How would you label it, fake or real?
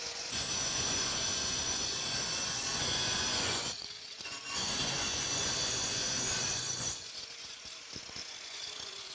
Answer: fake